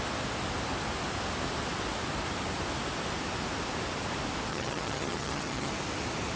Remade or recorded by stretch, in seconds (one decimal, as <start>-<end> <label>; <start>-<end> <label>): 0.0-4.5 recorded; 4.5-5.7 remade; 5.7-6.4 recorded